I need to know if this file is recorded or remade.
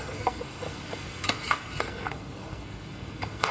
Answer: remade